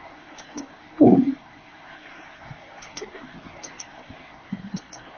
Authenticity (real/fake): fake